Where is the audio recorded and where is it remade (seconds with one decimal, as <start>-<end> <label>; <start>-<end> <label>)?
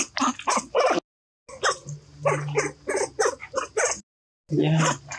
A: 0.0-5.2 recorded